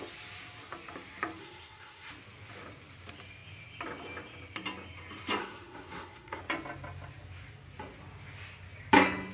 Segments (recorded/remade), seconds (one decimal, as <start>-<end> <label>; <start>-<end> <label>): 0.0-1.4 recorded; 1.4-2.1 remade; 2.1-5.4 recorded; 5.4-6.4 remade; 6.4-9.3 recorded